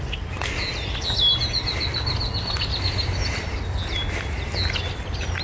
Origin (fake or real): real